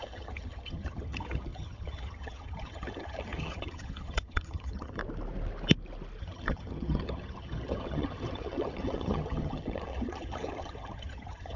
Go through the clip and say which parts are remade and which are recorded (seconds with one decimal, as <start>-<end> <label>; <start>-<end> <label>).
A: 0.0-5.0 remade; 5.0-6.2 recorded; 6.2-11.6 remade